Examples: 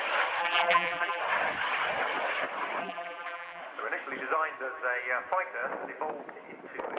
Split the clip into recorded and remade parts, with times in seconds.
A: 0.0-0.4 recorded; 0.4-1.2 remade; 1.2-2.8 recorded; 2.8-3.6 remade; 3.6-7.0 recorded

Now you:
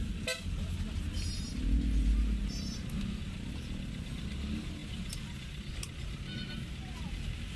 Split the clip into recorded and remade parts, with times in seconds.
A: 0.0-7.6 recorded